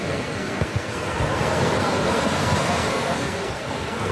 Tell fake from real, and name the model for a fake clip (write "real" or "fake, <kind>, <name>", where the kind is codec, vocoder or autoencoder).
fake, codec, SNAC